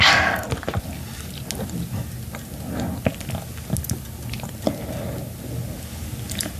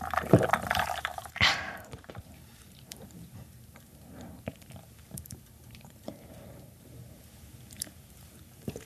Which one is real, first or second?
first